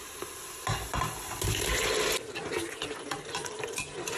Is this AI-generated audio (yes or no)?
no